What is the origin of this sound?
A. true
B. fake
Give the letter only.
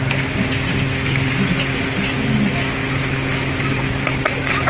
A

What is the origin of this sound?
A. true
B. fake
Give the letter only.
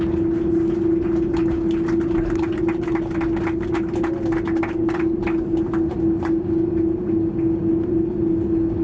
A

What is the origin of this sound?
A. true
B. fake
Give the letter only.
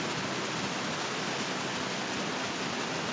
A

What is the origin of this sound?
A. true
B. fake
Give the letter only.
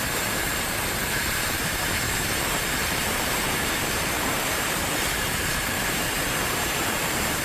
B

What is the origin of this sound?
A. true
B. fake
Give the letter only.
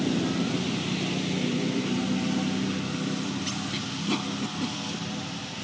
A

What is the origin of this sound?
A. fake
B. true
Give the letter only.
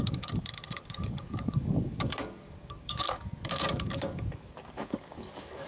A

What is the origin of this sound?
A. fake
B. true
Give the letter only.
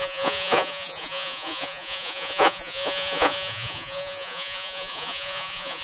A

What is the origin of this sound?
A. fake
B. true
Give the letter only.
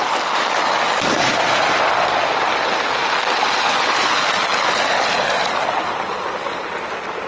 B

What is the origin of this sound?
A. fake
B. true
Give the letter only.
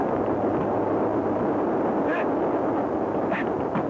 B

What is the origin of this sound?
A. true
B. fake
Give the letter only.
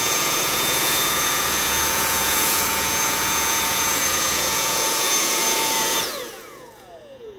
B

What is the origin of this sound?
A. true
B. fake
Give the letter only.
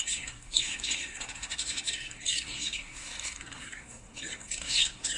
B